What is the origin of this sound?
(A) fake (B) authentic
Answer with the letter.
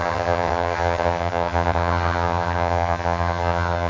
A